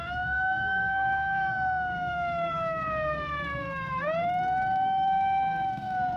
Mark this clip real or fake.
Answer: fake